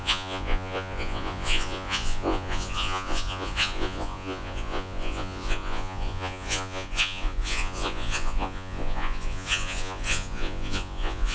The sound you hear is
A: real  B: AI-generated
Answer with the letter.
B